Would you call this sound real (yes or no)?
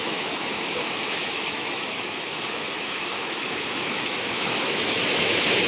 no